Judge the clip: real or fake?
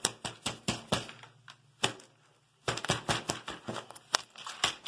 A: real